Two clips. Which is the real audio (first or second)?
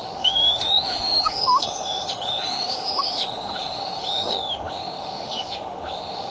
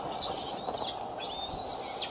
second